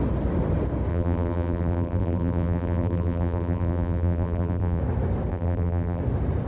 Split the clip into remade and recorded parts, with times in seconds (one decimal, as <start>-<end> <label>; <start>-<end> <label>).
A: 0.0-0.9 recorded; 0.9-4.8 remade; 4.8-5.3 recorded; 5.3-6.0 remade; 6.0-6.5 recorded

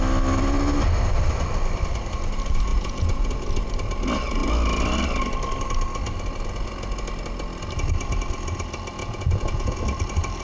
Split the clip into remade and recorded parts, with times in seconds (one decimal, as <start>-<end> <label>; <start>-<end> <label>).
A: 0.0-2.7 recorded; 2.7-3.3 remade; 3.3-9.0 recorded; 9.0-9.8 remade; 9.8-10.4 recorded